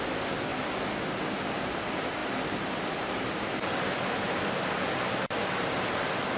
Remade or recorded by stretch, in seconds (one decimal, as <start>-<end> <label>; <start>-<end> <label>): 0.0-6.4 recorded